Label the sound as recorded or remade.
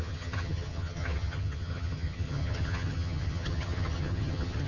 remade